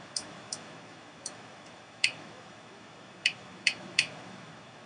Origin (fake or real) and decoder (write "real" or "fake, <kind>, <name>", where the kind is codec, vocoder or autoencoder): fake, autoencoder, DAC-VAE